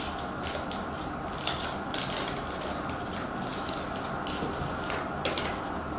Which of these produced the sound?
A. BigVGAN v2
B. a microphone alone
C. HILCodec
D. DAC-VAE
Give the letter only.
B